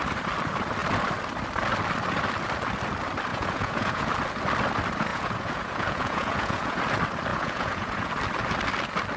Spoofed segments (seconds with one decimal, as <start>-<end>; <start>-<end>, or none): 3.3-4.1; 5.1-6.8; 7.3-8.1